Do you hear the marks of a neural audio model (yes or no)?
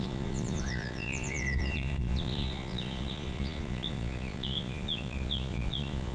yes